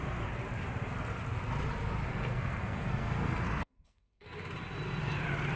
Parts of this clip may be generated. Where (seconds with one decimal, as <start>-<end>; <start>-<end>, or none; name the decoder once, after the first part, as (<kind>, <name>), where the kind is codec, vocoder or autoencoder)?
2.1-4.3 (codec, SNAC)